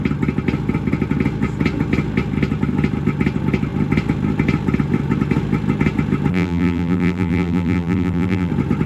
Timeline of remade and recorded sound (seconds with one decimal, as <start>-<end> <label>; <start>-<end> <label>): 0.0-6.3 recorded; 6.3-8.5 remade; 8.5-8.9 recorded